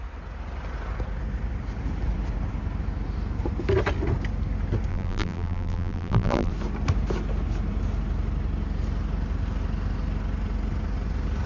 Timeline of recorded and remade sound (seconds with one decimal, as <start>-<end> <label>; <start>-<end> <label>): 0.0-4.9 recorded; 4.9-6.5 remade; 6.5-11.5 recorded

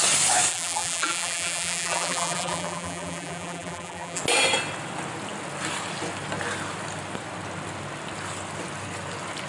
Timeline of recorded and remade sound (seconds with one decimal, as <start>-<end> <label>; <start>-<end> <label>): 0.0-0.5 recorded; 0.5-4.2 remade; 4.2-9.5 recorded

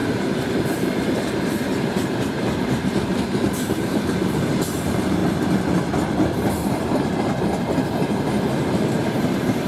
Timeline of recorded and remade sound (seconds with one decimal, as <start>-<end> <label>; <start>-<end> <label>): 0.0-5.2 remade; 5.2-8.5 recorded; 8.5-9.7 remade

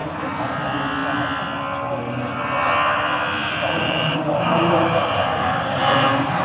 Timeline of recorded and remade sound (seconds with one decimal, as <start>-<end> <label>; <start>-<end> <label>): 0.0-0.6 remade; 0.6-3.4 recorded; 3.4-6.4 remade